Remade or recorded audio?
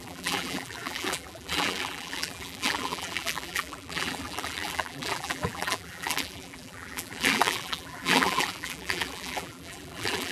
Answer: remade